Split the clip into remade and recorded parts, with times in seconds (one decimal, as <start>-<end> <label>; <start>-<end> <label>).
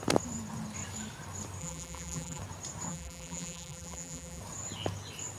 0.0-1.6 recorded; 1.6-2.4 remade; 2.4-2.9 recorded; 2.9-4.4 remade; 4.4-5.4 recorded